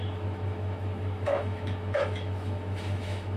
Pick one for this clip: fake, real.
fake